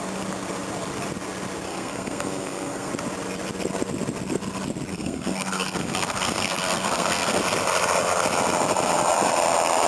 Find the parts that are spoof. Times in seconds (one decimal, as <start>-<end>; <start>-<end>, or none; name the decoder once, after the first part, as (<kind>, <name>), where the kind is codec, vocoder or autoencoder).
1.7-2.9 (codec, SNAC); 4.9-7.4